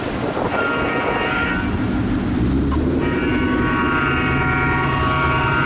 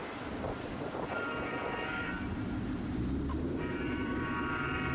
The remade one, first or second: second